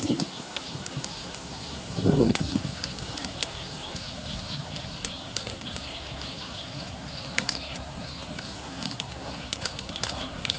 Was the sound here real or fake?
fake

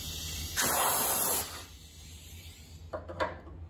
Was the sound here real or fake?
real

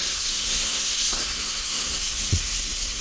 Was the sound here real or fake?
fake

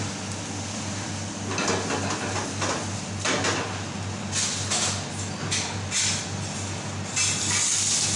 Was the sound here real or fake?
real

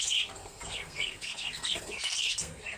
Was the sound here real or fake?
fake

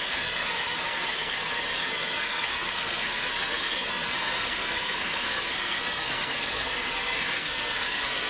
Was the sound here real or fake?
fake